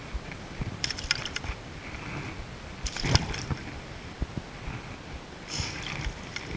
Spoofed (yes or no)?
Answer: no